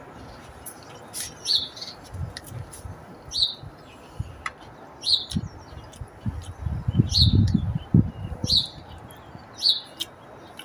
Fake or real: real